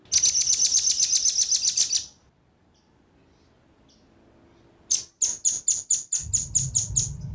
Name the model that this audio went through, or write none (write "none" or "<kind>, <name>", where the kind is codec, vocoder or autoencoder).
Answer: none